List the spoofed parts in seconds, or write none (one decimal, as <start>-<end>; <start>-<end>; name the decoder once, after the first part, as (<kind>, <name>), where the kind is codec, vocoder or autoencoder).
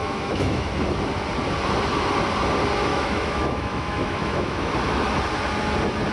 0.0-0.7 (autoencoder, DAC-VAE); 2.9-4.7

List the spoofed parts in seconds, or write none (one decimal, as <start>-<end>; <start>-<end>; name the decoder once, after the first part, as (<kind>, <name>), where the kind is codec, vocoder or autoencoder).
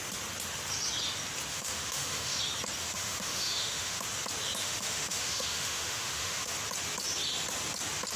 1.5-2.4 (autoencoder, DAC-VAE); 2.8-4.0; 4.6-6.5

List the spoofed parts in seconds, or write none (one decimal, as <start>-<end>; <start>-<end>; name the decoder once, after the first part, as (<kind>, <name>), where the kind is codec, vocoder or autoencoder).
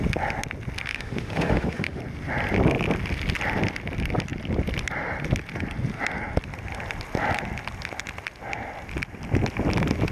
0.9-2.0 (autoencoder, DAC-VAE)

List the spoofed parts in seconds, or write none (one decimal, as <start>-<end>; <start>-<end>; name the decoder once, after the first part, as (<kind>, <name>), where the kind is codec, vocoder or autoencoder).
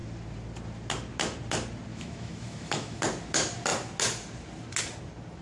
1.9-3.0 (autoencoder, DAC-VAE)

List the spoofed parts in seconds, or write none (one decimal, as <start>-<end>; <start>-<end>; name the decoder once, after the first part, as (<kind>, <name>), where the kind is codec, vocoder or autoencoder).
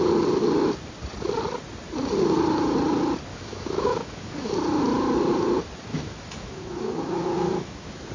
3.3-4.5 (autoencoder, DAC-VAE); 5.9-8.1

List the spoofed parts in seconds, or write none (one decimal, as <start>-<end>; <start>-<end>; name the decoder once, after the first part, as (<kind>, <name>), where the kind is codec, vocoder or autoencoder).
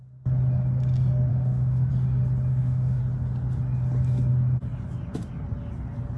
1.3-1.9 (autoencoder, DAC-VAE); 2.5-3.0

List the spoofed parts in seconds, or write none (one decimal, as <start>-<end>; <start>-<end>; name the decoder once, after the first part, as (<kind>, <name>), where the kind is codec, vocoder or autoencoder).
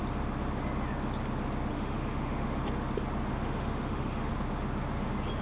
1.7-2.6 (autoencoder, DAC-VAE); 3.3-4.3